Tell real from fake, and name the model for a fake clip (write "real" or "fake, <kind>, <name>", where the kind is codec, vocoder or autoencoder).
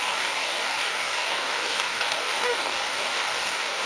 fake, codec, DAC